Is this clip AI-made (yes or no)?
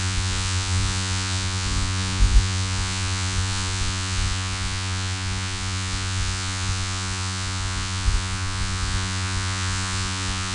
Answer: yes